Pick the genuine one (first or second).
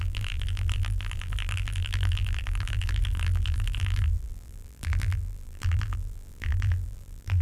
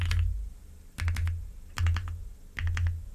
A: second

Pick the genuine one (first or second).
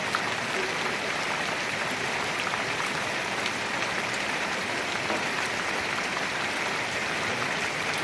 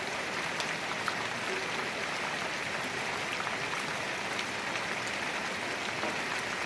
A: second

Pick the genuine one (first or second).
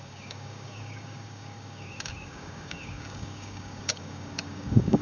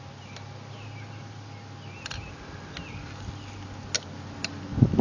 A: second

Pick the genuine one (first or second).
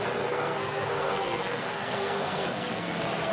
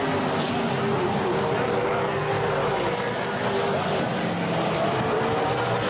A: second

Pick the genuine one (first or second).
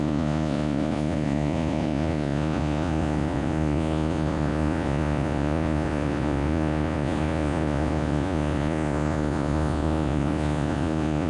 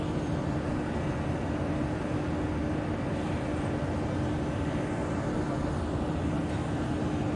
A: second